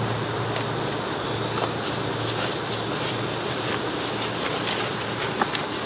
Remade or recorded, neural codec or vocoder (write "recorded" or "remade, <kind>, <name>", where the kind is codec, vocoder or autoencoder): recorded